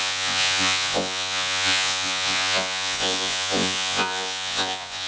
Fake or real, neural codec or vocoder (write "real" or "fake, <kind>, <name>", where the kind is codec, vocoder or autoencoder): fake, vocoder, Vocos